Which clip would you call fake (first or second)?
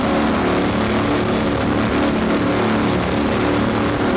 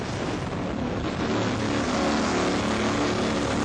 first